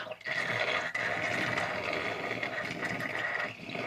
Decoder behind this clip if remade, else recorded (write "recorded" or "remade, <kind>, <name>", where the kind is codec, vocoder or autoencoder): recorded